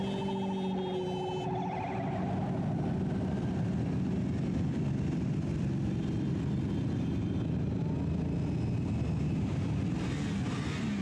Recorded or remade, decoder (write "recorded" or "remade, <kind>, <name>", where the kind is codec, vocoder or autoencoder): recorded